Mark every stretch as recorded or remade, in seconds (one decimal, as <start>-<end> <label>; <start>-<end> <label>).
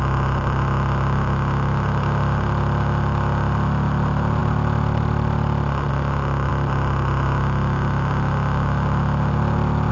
0.0-9.9 recorded